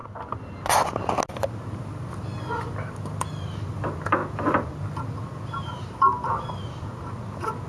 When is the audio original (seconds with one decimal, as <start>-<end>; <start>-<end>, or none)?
0.0-7.7